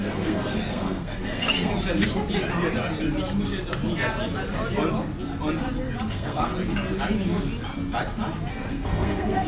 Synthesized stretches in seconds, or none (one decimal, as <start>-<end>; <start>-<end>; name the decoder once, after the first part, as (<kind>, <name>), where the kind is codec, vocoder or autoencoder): 0.0-1.7 (codec, SNAC); 6.1-6.5; 8.5-9.5